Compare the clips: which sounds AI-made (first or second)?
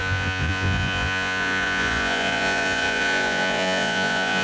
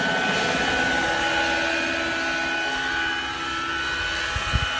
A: first